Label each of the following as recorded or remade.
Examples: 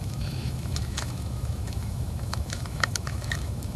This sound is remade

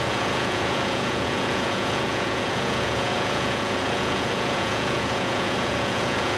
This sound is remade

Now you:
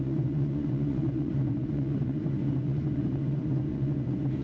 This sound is remade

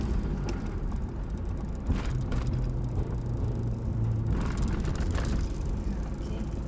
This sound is recorded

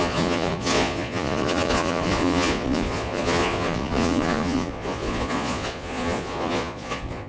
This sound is remade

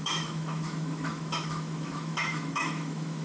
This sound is remade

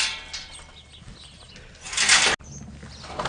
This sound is recorded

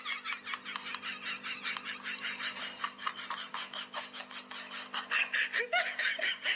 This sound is recorded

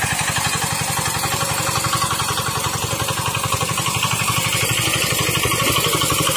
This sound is recorded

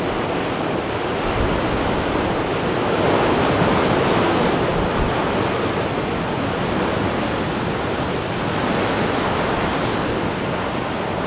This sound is recorded